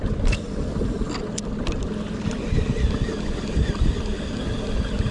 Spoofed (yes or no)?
no